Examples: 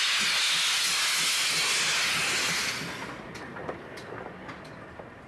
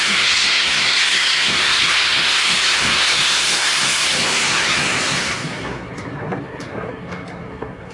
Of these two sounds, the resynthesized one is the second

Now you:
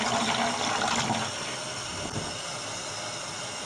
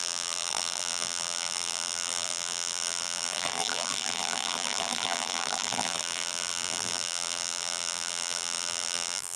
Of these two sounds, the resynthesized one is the second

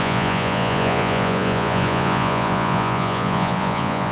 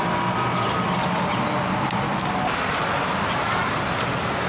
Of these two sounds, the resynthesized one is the first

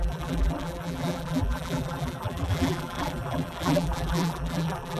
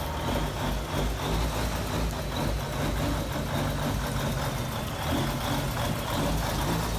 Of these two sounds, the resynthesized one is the first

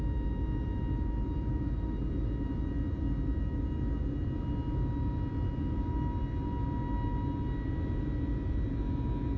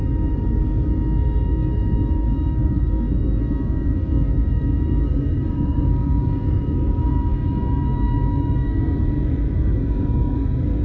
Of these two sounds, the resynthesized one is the second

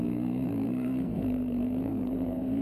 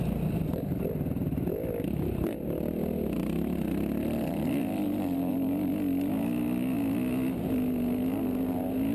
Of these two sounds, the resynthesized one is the first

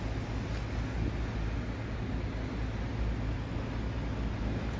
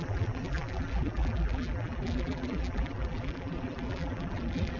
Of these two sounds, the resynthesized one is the second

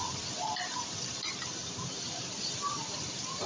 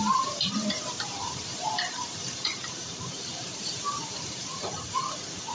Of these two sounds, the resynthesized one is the second